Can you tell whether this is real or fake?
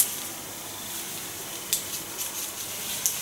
real